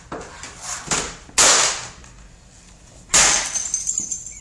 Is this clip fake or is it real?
real